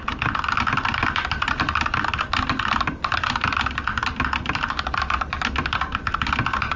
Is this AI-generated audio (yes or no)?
no